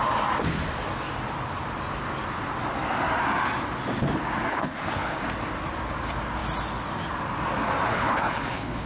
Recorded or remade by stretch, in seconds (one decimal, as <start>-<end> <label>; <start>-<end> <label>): 0.0-4.5 recorded; 4.5-5.2 remade; 5.2-7.9 recorded; 7.9-8.9 remade